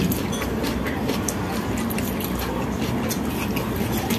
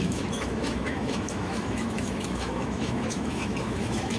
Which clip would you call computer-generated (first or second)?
second